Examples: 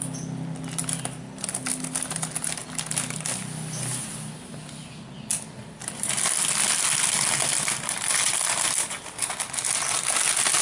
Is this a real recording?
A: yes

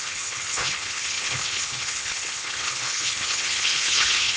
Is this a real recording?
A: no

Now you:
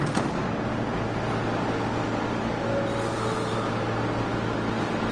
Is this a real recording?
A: yes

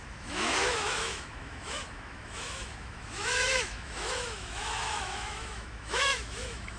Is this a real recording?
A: no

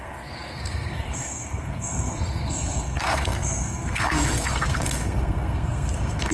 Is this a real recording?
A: no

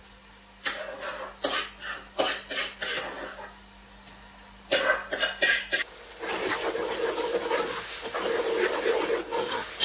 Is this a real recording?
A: yes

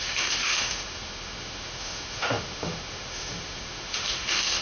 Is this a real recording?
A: no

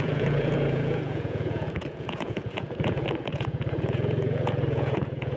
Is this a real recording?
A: no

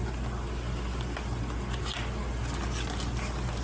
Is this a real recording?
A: yes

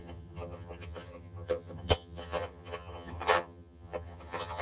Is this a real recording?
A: no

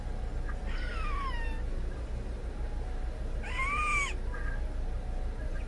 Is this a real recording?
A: yes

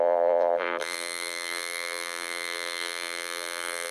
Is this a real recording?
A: no